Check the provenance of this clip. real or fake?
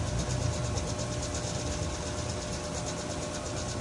real